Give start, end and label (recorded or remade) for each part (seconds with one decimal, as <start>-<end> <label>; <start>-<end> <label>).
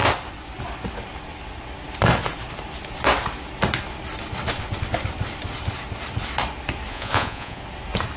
0.0-6.9 recorded; 6.9-7.6 remade; 7.6-8.2 recorded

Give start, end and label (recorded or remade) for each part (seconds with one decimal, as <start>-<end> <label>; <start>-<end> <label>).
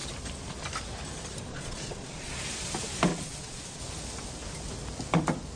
0.0-1.5 recorded; 1.5-2.4 remade; 2.4-3.1 recorded; 3.1-3.8 remade; 3.8-5.6 recorded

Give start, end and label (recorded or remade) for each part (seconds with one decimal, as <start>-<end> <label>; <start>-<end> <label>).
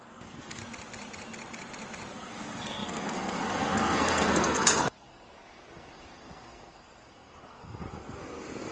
0.0-0.6 remade; 0.6-2.1 recorded; 2.1-8.7 remade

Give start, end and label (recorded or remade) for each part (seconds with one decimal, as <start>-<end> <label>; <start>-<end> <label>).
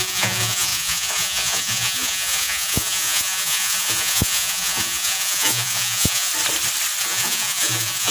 0.0-6.3 remade; 6.3-7.0 recorded; 7.0-8.1 remade